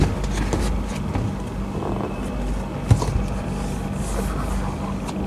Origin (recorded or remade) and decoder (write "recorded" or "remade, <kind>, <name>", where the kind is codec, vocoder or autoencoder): recorded